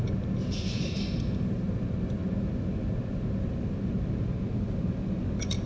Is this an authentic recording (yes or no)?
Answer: yes